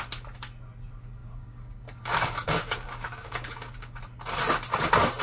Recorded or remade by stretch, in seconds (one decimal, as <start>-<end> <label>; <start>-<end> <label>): 0.0-1.2 recorded; 1.2-4.0 remade; 4.0-5.2 recorded